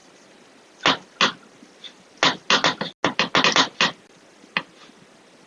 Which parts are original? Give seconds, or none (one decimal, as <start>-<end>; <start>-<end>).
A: 0.0-5.5

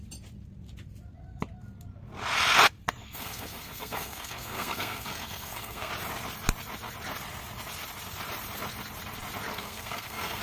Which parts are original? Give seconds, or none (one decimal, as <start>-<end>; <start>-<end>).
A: 0.0-3.0; 5.9-9.5

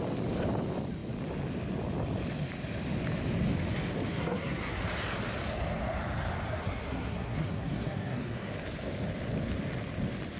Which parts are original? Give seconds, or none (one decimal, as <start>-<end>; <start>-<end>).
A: 0.0-4.1; 4.8-6.5; 8.5-10.4

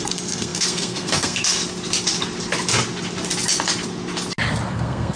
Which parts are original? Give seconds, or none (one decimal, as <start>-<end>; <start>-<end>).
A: 1.6-4.7

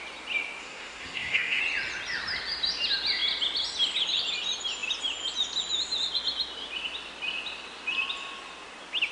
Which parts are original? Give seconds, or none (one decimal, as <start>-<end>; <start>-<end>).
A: 0.0-0.6; 1.6-9.1

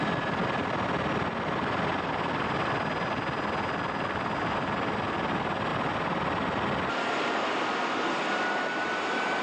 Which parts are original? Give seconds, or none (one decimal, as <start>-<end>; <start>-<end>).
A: 0.0-9.4

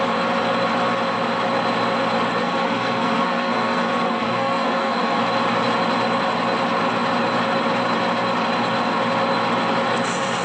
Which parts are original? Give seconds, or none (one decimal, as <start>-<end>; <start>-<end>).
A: 0.0-2.4; 5.2-10.4

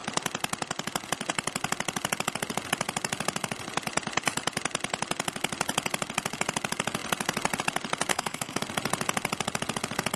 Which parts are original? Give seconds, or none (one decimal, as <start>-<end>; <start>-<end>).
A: 0.0-8.1; 8.6-10.2